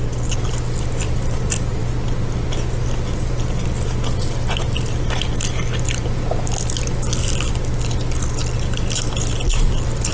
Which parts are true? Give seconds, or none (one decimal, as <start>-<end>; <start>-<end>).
0.0-10.1